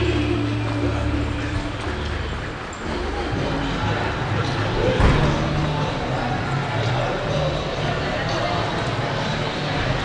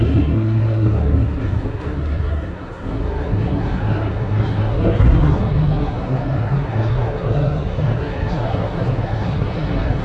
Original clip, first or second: first